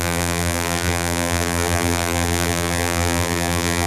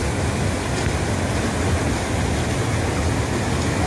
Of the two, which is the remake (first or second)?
first